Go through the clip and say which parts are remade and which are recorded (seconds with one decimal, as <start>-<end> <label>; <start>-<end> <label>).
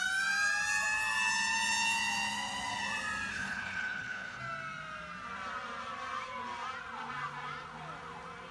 0.0-3.3 recorded; 3.3-4.4 remade; 4.4-8.5 recorded